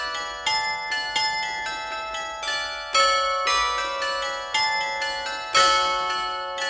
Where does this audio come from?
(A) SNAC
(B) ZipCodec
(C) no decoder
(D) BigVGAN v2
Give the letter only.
C